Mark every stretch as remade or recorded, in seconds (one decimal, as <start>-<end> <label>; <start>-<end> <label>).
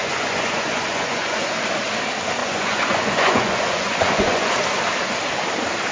0.0-1.5 remade; 1.5-2.4 recorded; 2.4-4.5 remade; 4.5-5.9 recorded